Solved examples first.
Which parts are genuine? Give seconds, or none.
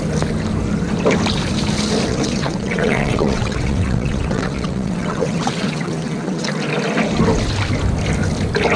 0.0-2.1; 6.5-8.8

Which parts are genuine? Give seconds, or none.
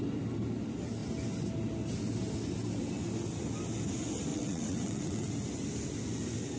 0.0-4.3; 5.3-6.6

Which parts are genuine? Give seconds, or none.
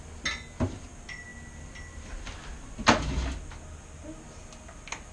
0.0-5.1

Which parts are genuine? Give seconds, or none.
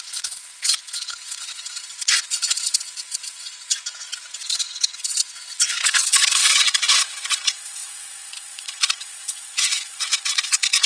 none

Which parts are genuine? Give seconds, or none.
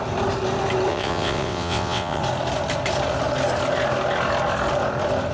0.0-0.9; 2.2-5.3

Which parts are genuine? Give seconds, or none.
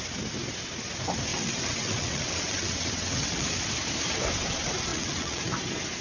0.0-1.3; 3.5-4.9; 5.4-6.0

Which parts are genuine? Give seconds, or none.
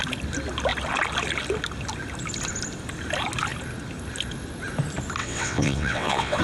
0.0-5.2